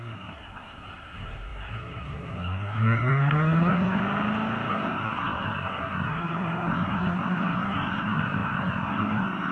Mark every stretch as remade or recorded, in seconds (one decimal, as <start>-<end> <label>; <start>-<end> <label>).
0.0-4.0 remade; 4.0-4.7 recorded; 4.7-9.5 remade